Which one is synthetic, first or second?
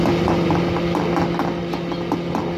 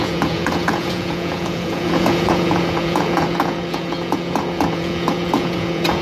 second